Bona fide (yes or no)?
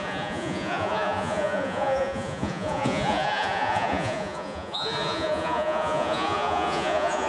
no